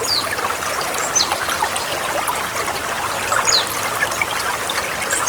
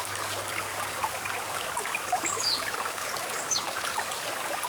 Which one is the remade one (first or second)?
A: second